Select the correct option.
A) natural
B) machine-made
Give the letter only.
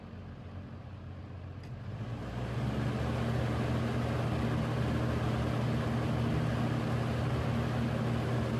A